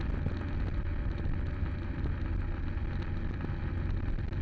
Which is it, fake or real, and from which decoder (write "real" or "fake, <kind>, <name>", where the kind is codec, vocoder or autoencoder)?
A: real